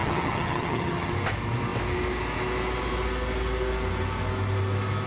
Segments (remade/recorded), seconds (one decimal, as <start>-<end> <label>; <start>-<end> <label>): 0.0-1.1 remade; 1.1-5.1 recorded